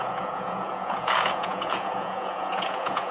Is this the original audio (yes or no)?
no